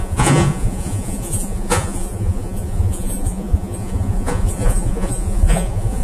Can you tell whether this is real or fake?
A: fake